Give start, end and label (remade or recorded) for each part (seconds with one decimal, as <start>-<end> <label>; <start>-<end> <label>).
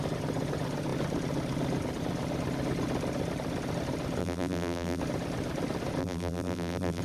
0.0-4.2 recorded; 4.2-5.0 remade; 5.0-6.0 recorded; 6.0-7.0 remade